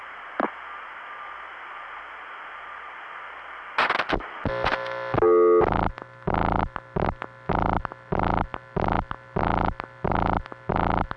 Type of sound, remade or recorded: recorded